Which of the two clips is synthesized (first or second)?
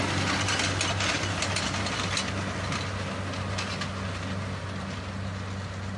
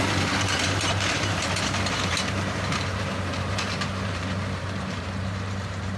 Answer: second